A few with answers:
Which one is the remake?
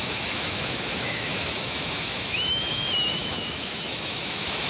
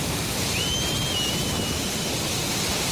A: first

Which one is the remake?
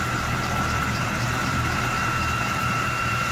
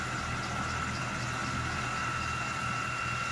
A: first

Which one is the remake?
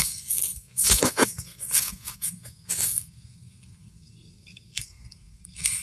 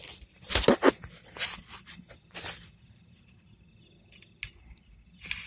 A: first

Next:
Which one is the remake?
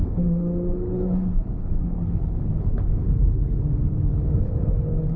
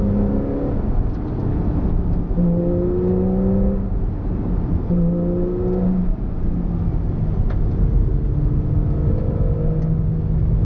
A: first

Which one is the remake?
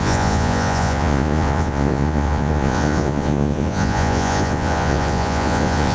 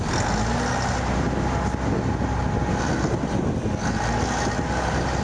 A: first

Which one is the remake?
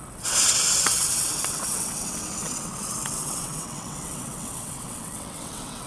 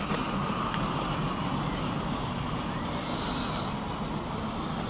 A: first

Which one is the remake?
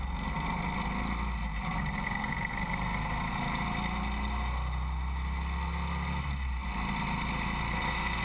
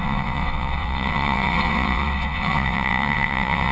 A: second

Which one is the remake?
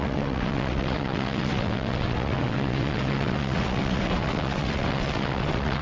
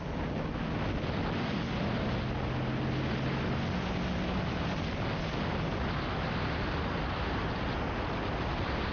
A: first